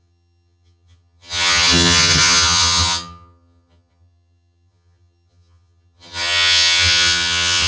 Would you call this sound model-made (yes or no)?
yes